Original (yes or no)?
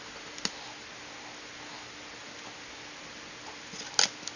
yes